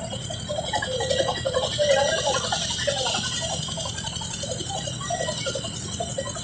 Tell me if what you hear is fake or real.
real